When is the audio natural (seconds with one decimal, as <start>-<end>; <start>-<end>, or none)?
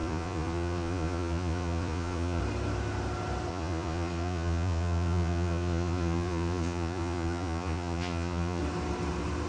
2.4-3.5; 8.6-9.5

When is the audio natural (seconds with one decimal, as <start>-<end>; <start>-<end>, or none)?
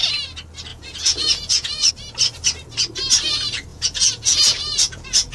0.0-0.7; 1.9-3.7